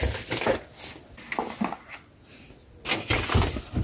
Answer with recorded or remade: recorded